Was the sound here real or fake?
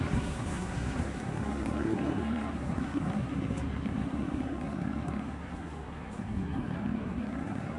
fake